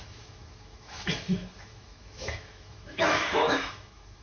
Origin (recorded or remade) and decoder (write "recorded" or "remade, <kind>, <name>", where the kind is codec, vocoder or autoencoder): remade, autoencoder, DAC-VAE